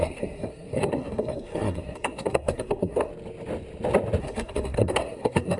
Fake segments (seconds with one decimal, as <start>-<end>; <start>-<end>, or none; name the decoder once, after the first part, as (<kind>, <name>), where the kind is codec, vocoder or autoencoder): 0.0-3.1 (codec, SNAC); 4.2-5.6